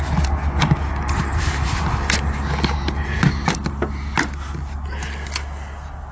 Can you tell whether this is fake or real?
real